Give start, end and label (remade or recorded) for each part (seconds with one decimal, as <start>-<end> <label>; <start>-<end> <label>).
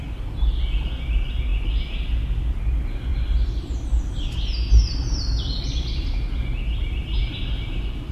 0.0-3.1 recorded; 3.1-5.0 remade; 5.0-8.1 recorded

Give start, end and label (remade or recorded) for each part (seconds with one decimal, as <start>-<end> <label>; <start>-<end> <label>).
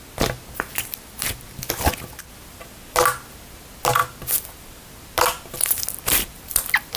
0.0-7.0 recorded